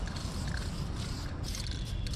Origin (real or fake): real